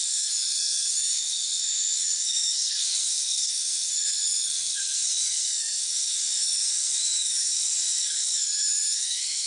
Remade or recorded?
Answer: remade